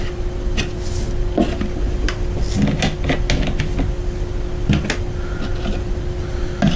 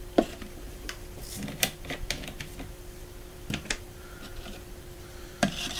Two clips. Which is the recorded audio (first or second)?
first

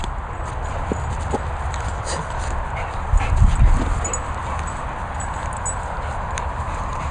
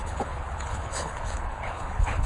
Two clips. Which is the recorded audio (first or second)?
first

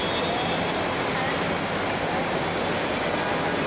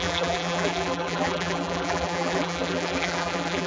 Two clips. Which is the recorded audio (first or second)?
first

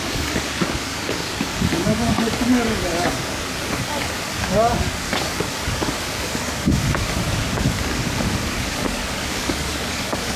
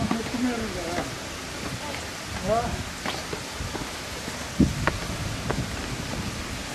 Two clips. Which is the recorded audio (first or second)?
second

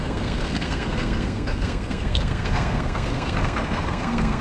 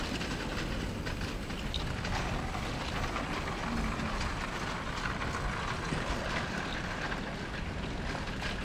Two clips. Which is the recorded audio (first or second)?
second